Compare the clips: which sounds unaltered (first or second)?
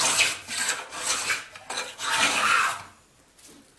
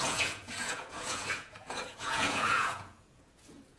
first